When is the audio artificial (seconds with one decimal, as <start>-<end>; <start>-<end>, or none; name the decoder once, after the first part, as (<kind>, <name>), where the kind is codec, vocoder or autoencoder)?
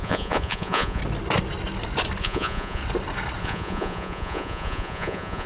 0.0-1.0 (vocoder, Vocos); 2.2-2.8; 3.4-5.5